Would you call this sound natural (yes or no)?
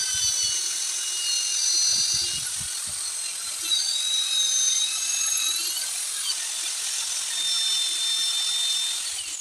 yes